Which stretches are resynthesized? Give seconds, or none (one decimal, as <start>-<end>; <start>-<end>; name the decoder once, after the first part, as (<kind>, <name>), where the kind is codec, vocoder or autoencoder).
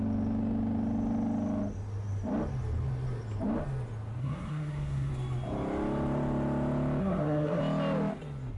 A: 4.2-5.1 (codec, SNAC); 7.0-7.6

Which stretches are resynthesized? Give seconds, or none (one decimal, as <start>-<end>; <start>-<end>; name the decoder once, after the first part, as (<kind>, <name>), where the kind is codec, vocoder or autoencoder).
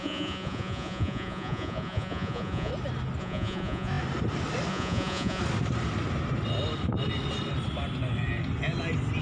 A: 0.0-2.7 (vocoder, Vocos); 3.2-3.9; 4.7-5.4